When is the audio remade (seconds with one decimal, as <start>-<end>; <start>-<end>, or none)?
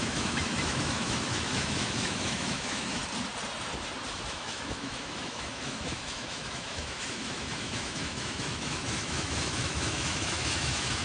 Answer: 0.0-3.0; 4.1-11.0